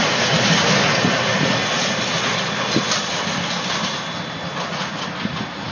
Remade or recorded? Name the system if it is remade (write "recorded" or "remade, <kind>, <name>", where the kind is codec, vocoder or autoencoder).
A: recorded